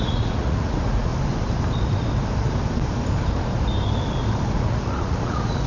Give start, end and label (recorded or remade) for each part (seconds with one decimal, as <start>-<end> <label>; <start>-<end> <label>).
0.0-1.1 remade; 1.1-4.5 recorded; 4.5-5.7 remade